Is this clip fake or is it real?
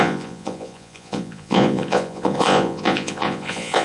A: fake